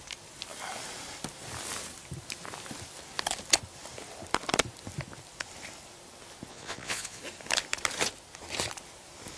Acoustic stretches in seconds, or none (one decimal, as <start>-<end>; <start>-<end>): 0.0-6.5; 7.2-9.4